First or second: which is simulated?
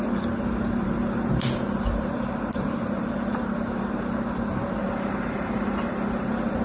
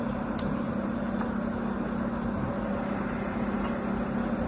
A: first